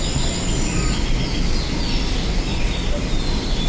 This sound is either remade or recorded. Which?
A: recorded